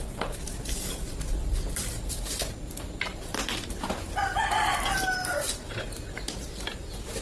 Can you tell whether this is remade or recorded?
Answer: recorded